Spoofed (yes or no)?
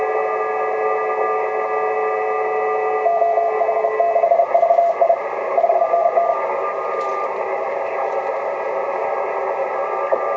no